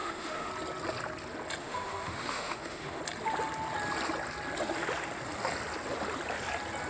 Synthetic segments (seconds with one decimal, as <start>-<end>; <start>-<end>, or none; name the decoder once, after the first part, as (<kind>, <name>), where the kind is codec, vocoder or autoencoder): 0.0-0.5 (autoencoder, DAC-VAE); 1.6-3.0